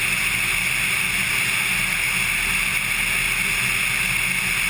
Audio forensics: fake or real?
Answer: real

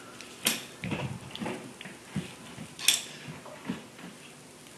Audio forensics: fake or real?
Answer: real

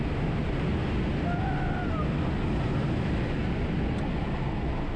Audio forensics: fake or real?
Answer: real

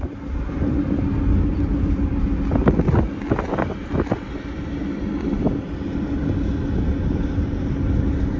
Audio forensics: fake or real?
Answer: real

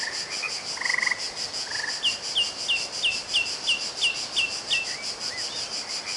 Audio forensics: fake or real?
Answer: real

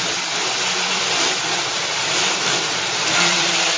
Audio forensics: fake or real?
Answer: fake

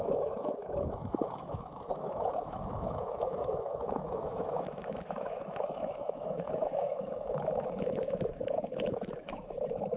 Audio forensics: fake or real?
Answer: fake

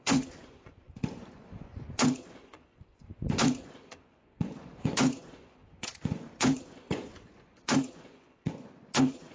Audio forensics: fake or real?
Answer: fake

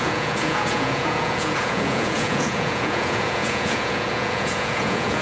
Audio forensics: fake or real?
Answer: fake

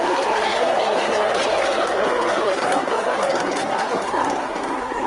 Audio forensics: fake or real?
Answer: fake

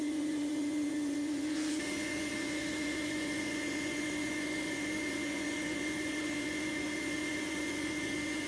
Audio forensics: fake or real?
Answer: fake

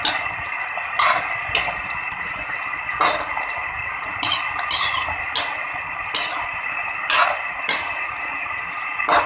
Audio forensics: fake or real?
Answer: real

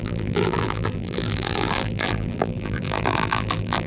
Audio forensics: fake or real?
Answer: fake